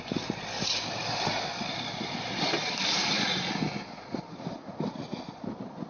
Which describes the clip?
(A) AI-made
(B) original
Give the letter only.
B